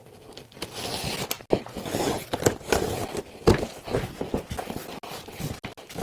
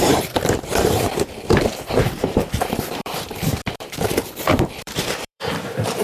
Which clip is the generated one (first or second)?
second